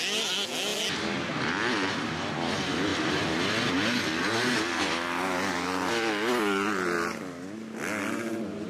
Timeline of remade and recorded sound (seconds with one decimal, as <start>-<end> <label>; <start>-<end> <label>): 0.0-8.7 recorded